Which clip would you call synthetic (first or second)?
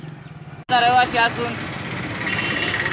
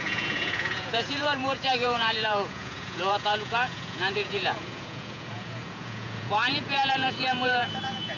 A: second